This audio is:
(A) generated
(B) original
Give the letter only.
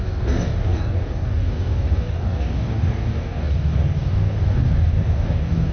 A